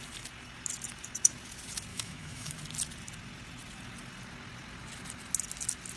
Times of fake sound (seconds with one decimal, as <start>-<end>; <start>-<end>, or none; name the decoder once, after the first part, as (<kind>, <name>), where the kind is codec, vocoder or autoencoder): 1.9-2.5 (autoencoder, DAC-VAE)

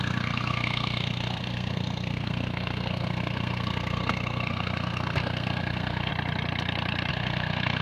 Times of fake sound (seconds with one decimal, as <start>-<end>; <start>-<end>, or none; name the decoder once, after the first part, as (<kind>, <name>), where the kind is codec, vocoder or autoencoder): 0.0-6.1 (codec, SNAC); 7.1-7.8